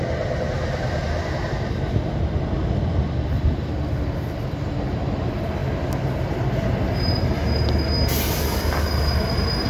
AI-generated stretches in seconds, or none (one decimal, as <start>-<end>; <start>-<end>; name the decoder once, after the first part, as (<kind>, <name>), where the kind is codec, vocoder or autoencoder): none